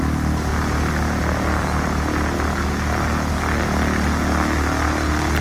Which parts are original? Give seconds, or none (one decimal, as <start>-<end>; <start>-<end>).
0.0-5.4